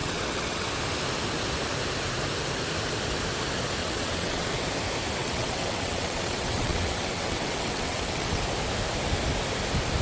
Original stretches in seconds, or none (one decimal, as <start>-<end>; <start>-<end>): 0.7-3.8; 4.5-5.2; 8.4-10.0

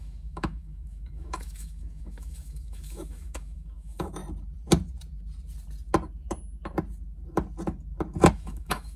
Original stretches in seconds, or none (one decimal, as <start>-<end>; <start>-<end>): 4.2-8.3

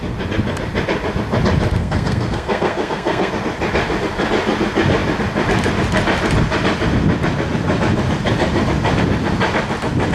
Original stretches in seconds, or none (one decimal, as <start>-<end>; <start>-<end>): 0.0-1.8; 3.3-10.1

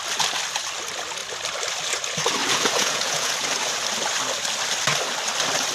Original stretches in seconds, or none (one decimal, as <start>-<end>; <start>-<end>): 0.0-2.4; 3.3-5.7

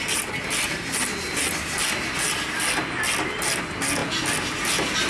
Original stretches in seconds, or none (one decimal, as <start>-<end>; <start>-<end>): 0.0-5.1

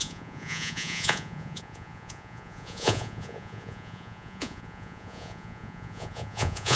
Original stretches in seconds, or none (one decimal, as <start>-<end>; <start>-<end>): none

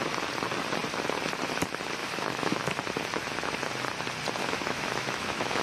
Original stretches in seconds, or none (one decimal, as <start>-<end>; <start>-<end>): 0.0-2.0; 2.7-4.4

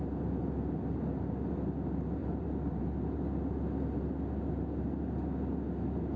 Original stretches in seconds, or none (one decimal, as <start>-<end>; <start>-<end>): 0.0-2.2; 2.8-6.2